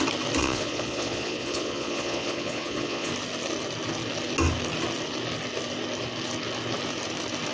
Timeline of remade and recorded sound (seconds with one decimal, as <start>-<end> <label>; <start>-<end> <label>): 0.0-0.4 recorded; 0.4-3.1 remade; 3.1-7.5 recorded